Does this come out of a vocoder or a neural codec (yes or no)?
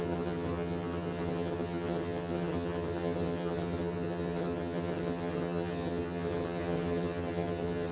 yes